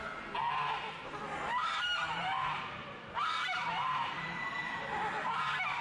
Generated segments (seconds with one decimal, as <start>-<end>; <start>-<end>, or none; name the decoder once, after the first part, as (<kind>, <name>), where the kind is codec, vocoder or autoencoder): 1.6-5.1 (vocoder, BigVGAN v2)